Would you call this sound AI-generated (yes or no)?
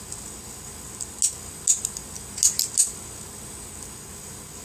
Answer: no